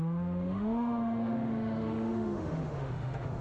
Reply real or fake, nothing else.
fake